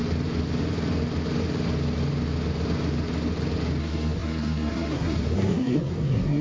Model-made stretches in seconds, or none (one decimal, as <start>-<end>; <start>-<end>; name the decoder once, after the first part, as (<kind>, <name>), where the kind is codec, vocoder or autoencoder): 3.8-6.4 (codec, SNAC)